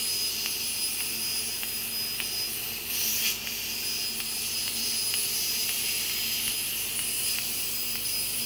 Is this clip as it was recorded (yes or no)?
yes